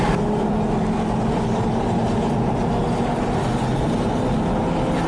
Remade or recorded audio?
recorded